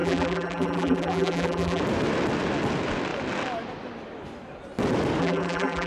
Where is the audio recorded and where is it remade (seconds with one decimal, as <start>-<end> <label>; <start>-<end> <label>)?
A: 0.0-1.8 remade; 1.8-5.2 recorded; 5.2-5.9 remade